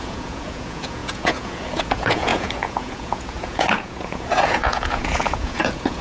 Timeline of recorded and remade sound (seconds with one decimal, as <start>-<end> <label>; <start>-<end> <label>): 0.0-6.0 remade